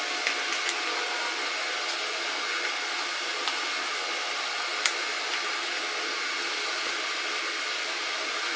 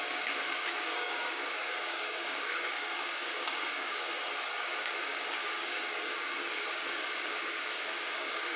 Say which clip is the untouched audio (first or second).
first